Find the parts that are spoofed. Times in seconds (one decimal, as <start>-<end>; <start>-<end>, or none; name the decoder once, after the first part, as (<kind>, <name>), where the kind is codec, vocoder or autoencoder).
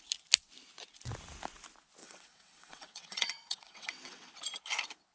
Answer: 2.0-4.3 (vocoder, WaveNeXt)